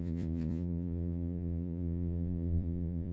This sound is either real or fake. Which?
fake